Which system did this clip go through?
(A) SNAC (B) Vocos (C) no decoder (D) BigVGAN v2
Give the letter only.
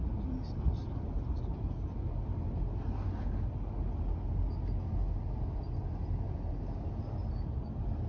C